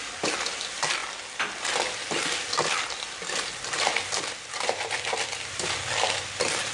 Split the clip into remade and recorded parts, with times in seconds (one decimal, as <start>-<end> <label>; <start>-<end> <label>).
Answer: 0.0-6.7 recorded